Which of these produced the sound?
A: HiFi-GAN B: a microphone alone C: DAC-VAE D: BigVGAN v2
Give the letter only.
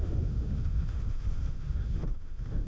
C